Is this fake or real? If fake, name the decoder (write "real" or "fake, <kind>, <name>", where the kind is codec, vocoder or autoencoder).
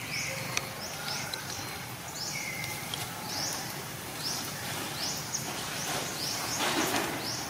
real